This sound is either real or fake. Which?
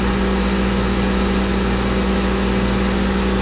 real